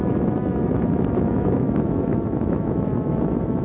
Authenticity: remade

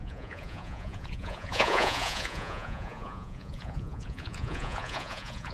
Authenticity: remade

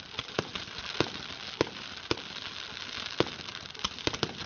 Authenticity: recorded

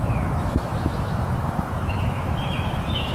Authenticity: remade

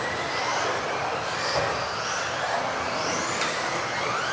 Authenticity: recorded